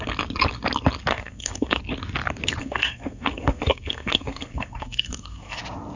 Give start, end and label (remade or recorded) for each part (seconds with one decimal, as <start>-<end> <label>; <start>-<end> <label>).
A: 0.0-1.1 recorded; 1.1-1.8 remade; 1.8-2.6 recorded; 2.6-5.6 remade; 5.6-6.0 recorded